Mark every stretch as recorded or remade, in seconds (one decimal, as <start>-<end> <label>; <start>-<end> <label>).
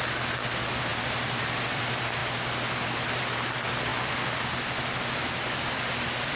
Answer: 0.0-0.9 recorded; 0.9-1.8 remade; 1.8-6.4 recorded